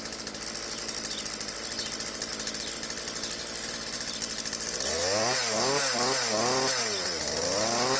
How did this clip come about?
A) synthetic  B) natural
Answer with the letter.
B